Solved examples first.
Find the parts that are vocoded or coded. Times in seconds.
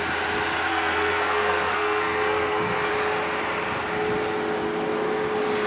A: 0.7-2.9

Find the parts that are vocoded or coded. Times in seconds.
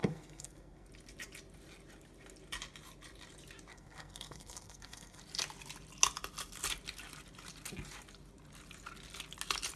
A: 0.0-0.9; 3.7-5.2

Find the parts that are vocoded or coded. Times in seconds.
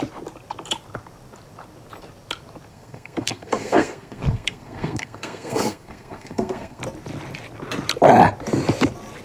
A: 2.7-6.8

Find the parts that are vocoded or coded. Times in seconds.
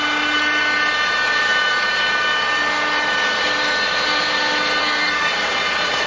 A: 4.8-5.3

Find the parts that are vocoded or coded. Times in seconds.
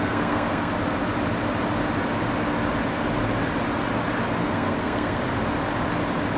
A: 0.0-0.7; 4.5-5.2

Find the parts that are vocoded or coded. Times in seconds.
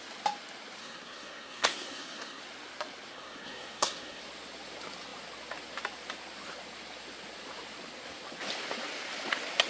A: 0.8-2.4; 3.1-4.2